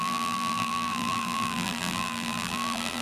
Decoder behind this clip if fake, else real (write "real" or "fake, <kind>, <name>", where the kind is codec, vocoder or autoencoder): fake, vocoder, BigVGAN v2